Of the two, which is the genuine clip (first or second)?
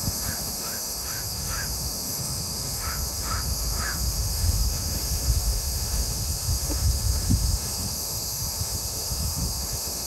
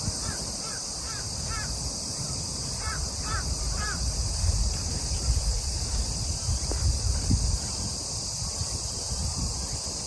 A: second